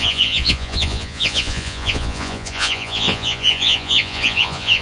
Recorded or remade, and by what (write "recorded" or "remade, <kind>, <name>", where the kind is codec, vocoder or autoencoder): remade, vocoder, Vocos